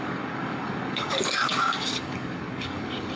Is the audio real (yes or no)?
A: no